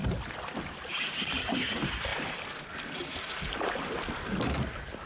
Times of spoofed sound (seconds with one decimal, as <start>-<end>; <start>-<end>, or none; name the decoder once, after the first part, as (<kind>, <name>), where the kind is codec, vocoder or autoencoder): none